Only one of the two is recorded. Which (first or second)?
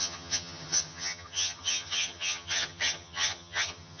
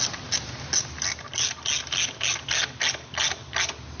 second